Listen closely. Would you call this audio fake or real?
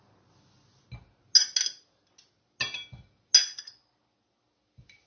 real